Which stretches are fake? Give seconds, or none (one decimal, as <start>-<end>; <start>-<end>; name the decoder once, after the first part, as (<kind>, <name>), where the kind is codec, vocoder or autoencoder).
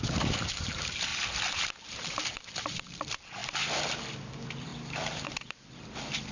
0.0-1.1 (vocoder, BigVGAN v2); 1.9-3.4; 4.2-6.3